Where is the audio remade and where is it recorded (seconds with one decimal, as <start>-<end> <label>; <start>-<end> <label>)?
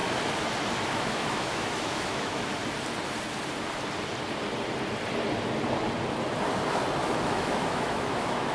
0.0-0.8 recorded; 0.8-2.6 remade; 2.6-7.0 recorded; 7.0-8.5 remade